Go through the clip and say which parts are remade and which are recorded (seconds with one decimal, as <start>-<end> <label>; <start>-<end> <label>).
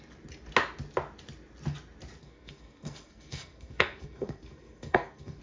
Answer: 0.0-2.2 recorded; 2.2-5.4 remade